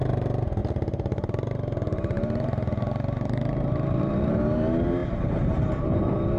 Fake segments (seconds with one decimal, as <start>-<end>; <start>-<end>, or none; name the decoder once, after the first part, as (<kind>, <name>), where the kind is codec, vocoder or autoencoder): 0.0-6.4 (vocoder, BigVGAN v2)